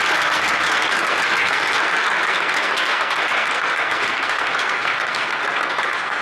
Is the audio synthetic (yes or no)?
yes